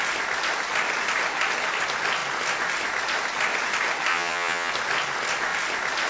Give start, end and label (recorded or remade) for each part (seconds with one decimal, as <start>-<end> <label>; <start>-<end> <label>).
0.0-4.1 recorded; 4.1-4.7 remade; 4.7-6.1 recorded